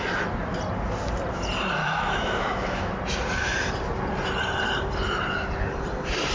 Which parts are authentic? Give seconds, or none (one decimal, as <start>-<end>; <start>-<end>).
0.0-1.8; 2.9-6.3